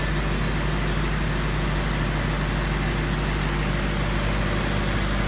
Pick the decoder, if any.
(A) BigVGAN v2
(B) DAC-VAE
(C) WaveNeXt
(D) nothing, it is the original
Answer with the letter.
D